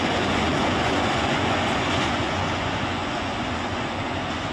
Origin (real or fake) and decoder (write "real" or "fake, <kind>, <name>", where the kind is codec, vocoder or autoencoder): fake, vocoder, Vocos